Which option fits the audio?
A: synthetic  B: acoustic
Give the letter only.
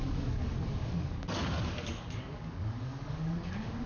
A